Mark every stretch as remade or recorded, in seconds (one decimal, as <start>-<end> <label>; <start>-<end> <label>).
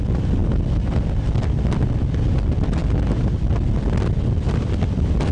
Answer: 0.0-5.3 recorded